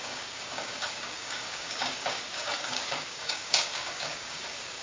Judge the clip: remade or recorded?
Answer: remade